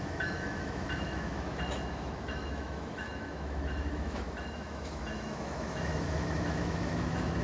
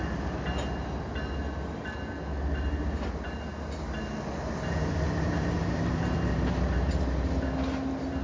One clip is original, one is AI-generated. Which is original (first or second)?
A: second